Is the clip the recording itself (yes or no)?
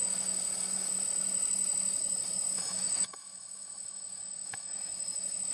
no